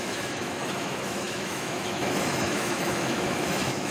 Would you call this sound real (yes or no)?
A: no